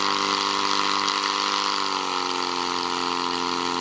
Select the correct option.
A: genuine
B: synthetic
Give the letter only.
A